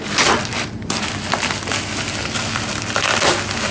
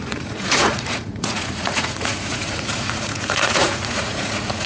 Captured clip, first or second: first